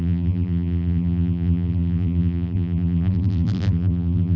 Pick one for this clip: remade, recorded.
remade